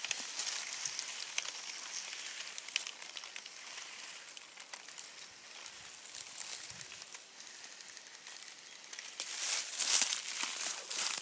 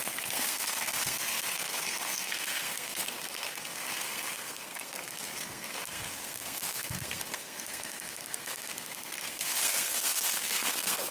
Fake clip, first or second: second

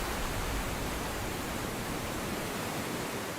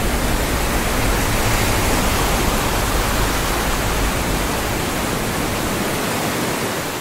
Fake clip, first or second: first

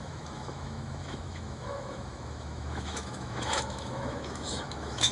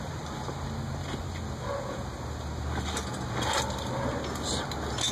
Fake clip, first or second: first